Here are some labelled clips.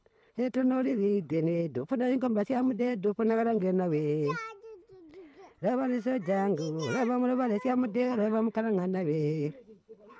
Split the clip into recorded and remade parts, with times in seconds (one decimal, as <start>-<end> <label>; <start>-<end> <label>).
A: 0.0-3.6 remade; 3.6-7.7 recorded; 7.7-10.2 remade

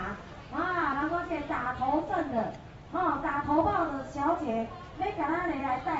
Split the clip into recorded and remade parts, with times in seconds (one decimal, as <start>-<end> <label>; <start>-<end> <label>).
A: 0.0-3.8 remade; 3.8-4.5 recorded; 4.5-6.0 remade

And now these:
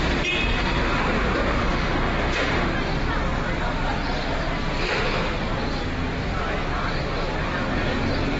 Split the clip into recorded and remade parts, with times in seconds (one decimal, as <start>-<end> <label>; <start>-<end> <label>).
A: 0.0-1.6 recorded; 1.6-2.7 remade; 2.7-8.4 recorded

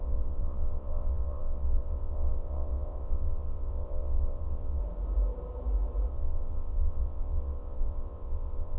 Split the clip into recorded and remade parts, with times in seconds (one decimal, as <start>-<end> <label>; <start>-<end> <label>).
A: 0.0-4.8 remade; 4.8-6.1 recorded; 6.1-8.8 remade